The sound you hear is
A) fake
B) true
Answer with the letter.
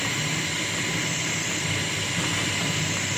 B